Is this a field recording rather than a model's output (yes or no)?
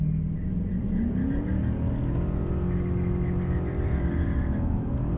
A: yes